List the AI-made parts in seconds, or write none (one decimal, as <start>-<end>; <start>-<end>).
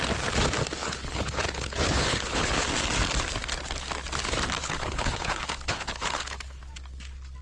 0.8-2.5; 4.6-6.6